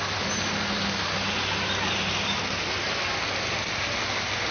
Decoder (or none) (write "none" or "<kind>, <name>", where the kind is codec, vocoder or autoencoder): none